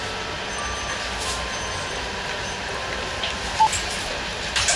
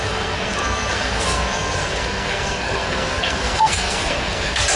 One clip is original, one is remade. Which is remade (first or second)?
second